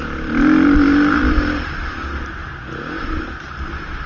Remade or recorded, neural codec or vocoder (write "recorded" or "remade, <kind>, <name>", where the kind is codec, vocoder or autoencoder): recorded